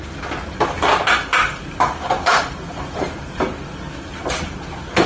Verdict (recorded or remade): recorded